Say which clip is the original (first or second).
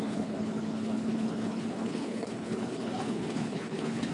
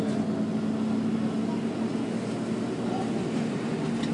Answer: second